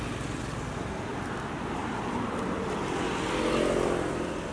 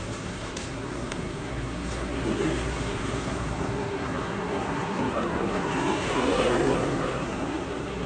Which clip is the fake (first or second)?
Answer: second